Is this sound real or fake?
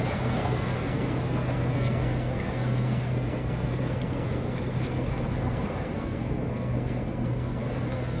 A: fake